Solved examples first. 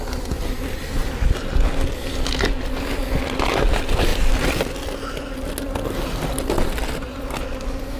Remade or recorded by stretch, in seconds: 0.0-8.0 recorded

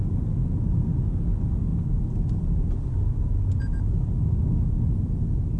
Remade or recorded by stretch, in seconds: 0.0-5.6 recorded

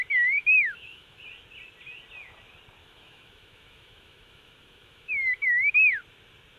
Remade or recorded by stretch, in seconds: 0.0-0.4 recorded; 0.4-1.2 remade; 1.2-2.8 recorded; 2.8-5.7 remade; 5.7-6.6 recorded

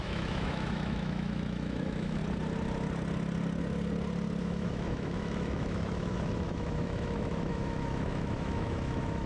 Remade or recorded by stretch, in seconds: 0.0-2.2 remade; 2.2-4.4 recorded; 4.4-9.3 remade

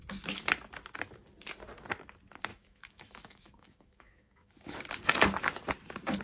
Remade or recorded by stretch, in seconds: 0.0-2.5 recorded; 2.5-4.8 remade; 4.8-6.2 recorded

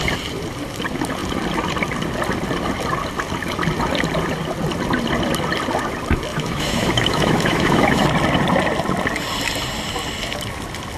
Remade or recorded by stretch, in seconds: 0.0-6.3 recorded; 6.3-8.0 remade; 8.0-11.0 recorded

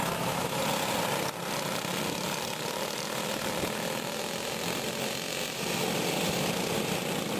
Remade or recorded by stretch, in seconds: 0.0-0.6 remade; 0.6-7.4 recorded